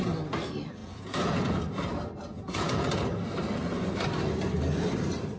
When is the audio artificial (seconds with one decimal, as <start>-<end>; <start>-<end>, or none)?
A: 0.8-1.6; 2.3-2.9